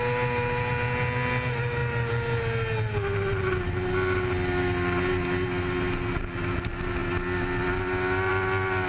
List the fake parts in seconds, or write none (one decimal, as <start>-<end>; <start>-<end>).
none